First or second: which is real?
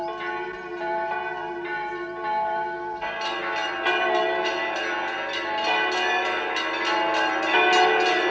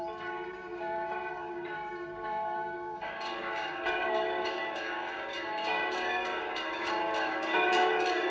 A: first